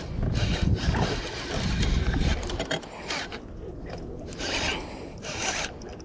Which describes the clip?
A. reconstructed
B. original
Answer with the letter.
B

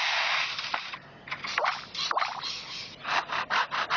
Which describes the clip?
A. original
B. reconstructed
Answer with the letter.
A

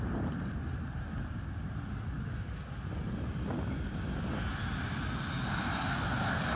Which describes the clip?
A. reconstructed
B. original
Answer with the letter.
B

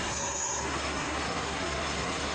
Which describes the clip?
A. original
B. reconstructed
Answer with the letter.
B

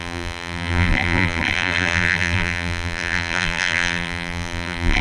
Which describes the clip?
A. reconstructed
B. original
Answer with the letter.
A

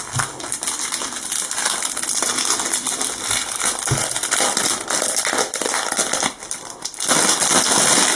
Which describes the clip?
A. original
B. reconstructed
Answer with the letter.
A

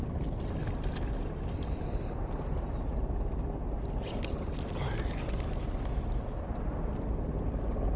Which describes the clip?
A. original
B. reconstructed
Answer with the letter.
A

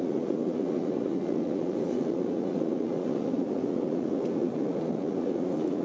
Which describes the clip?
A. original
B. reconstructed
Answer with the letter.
B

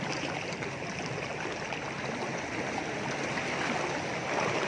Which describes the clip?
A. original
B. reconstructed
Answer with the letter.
A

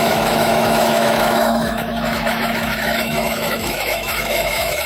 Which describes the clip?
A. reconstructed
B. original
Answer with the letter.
A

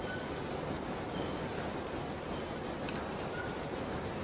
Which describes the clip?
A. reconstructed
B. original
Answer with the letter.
B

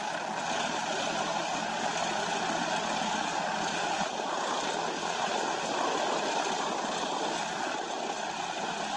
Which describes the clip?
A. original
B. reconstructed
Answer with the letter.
A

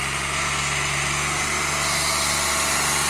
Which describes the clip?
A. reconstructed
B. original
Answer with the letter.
B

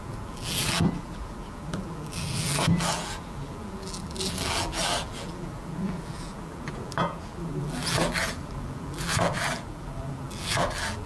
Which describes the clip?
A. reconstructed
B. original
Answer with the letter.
A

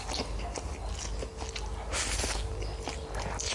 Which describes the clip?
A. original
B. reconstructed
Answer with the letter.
A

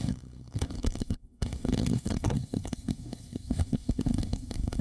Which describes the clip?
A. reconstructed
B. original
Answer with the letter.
A